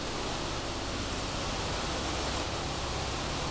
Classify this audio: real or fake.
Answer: real